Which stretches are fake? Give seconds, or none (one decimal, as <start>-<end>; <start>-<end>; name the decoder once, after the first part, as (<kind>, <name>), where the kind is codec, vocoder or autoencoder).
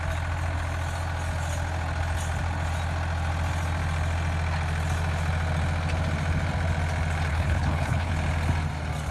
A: 7.3-8.1 (codec, HILCodec)